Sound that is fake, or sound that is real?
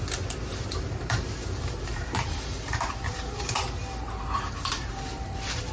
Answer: fake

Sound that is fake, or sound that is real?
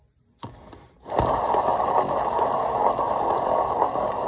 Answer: real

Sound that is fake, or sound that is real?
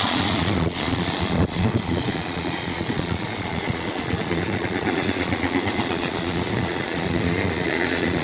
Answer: fake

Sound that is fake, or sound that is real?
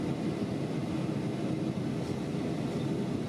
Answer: real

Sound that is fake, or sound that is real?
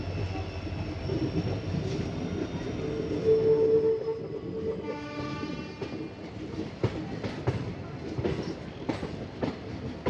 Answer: real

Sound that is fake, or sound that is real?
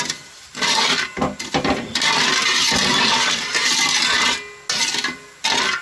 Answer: real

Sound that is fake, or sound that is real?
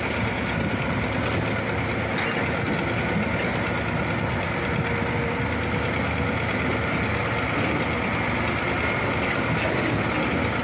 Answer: real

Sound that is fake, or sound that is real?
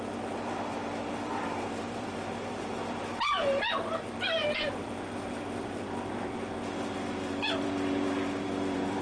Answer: fake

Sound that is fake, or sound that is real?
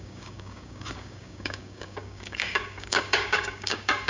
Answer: fake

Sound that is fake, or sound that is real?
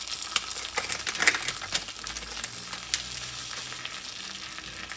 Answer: real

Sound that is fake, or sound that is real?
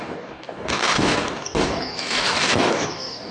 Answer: fake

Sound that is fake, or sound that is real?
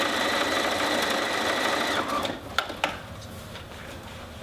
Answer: real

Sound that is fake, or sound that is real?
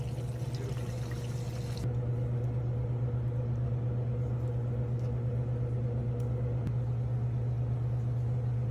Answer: real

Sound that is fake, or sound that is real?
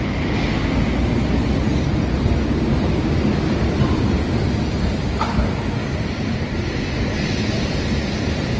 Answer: real